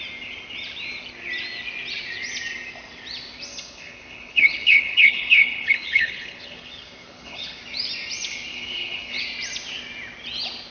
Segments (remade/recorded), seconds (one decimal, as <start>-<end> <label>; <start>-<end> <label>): 0.0-3.5 recorded; 3.5-7.6 remade; 7.6-8.5 recorded; 8.5-9.2 remade; 9.2-10.7 recorded